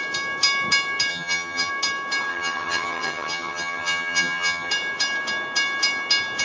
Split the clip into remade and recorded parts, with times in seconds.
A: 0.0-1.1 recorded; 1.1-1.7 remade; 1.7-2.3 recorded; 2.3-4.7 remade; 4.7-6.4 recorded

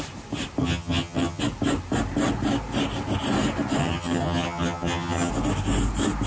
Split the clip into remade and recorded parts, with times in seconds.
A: 0.0-0.6 recorded; 0.6-1.4 remade; 1.4-3.8 recorded; 3.8-5.3 remade; 5.3-6.3 recorded

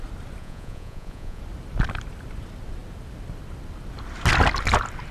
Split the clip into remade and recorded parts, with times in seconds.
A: 0.0-0.4 recorded; 0.4-1.4 remade; 1.4-5.1 recorded

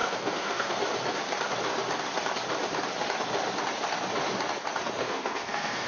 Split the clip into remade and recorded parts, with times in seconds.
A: 0.0-0.8 remade; 0.8-5.0 recorded; 5.0-5.9 remade

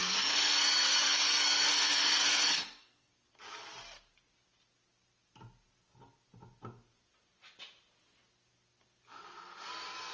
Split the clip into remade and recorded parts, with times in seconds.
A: 0.0-3.1 remade; 3.1-10.1 recorded